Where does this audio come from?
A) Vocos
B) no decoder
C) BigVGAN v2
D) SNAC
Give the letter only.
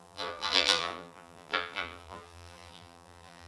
C